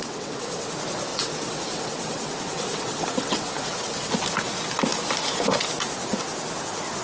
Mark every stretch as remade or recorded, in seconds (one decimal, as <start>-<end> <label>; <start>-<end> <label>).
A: 0.0-0.7 remade; 0.7-1.1 recorded; 1.1-4.1 remade; 4.1-7.0 recorded